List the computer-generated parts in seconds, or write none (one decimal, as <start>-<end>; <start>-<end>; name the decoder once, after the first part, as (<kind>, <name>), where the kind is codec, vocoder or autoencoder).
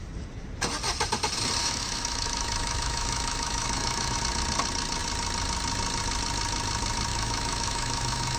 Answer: 1.6-4.2 (autoencoder, DAC-VAE); 7.1-8.4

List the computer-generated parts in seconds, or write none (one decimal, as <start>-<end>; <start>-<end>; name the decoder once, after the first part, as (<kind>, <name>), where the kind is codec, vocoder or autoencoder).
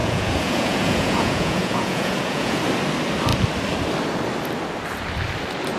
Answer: 0.0-2.6 (vocoder, Vocos)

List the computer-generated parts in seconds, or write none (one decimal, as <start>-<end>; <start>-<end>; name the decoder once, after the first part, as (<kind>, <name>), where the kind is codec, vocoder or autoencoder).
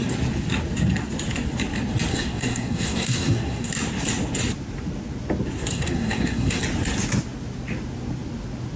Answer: 2.1-3.7 (codec, SNAC); 5.7-6.6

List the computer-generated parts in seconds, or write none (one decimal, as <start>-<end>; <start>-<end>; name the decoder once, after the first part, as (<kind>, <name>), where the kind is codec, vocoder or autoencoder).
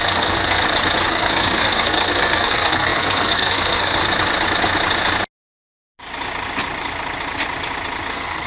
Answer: 0.0-0.6 (codec, SNAC); 1.1-4.0; 8.1-8.5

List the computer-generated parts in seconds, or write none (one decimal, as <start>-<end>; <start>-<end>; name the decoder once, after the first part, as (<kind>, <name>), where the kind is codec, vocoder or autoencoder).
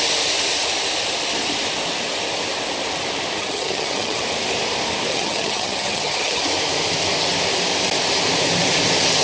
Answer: 3.4-4.2 (vocoder, HiFi-GAN); 5.1-6.4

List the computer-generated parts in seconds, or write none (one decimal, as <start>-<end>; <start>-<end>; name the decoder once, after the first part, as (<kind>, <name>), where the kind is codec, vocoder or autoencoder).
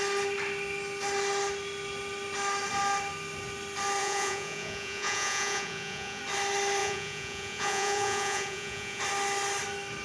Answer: 4.0-6.2 (vocoder, Vocos); 6.8-9.0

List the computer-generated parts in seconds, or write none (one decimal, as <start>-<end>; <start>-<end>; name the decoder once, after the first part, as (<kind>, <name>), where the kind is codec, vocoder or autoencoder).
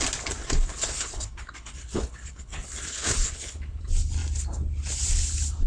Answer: 0.4-3.8 (codec, HILCodec)